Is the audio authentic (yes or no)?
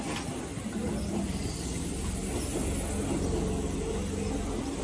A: yes